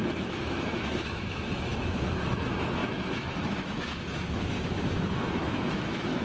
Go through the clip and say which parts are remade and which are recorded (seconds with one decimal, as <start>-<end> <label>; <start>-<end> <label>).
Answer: 0.0-6.2 remade